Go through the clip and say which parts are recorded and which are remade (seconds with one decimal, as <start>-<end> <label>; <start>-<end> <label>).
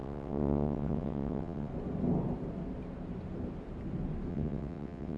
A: 0.0-1.7 remade; 1.7-4.3 recorded; 4.3-5.2 remade